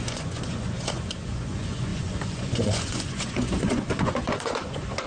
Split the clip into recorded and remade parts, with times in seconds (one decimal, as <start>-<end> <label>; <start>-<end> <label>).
0.0-5.1 remade